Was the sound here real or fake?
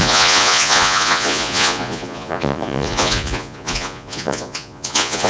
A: fake